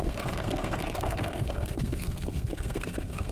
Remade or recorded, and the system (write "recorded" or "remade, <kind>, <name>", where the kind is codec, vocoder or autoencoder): remade, codec, SNAC